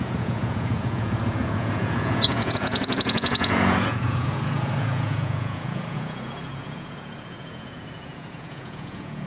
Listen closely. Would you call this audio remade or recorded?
remade